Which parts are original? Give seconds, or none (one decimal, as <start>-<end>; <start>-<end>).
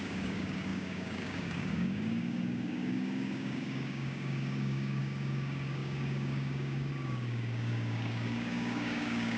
none